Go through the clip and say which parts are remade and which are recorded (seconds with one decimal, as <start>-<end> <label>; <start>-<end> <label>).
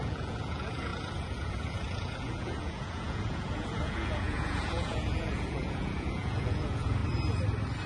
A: 0.0-7.0 remade; 7.0-7.9 recorded